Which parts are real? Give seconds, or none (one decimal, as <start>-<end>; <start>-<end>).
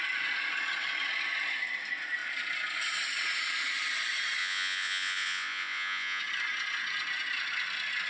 0.0-4.4; 6.2-8.1